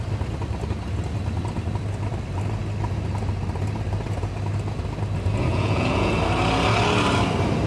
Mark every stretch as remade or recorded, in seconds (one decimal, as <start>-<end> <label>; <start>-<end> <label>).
0.0-5.5 recorded; 5.5-6.1 remade; 6.1-7.7 recorded